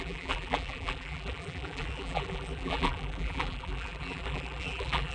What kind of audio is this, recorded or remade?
remade